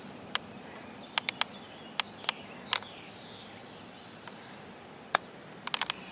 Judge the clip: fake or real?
real